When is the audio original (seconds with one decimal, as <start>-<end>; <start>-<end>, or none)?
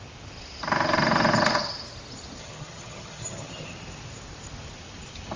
0.0-2.4; 3.7-5.4